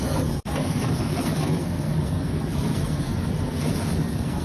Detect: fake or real fake